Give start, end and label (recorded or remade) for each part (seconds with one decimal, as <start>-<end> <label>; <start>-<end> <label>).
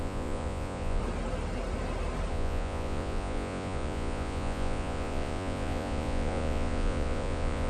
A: 0.0-1.0 remade; 1.0-2.3 recorded; 2.3-7.7 remade